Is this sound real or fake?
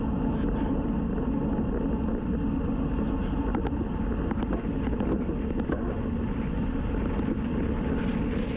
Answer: real